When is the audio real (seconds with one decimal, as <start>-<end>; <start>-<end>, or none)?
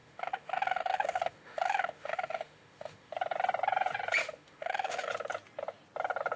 3.1-4.2; 5.1-6.4